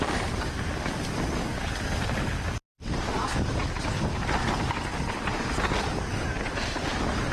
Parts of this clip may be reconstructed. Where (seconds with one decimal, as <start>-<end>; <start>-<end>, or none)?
none